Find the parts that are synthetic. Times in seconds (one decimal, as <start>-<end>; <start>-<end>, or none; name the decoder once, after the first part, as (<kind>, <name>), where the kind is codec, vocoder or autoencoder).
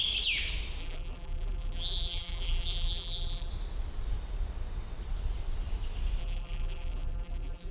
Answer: 0.8-3.5 (vocoder, BigVGAN v2); 6.2-7.7